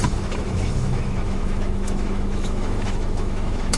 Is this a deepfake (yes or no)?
yes